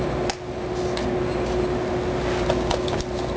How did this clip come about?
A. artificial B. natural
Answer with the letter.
B